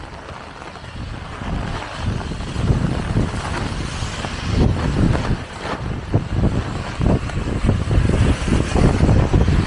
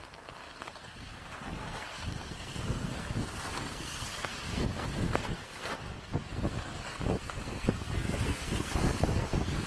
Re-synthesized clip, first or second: second